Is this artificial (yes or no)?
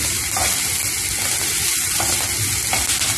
no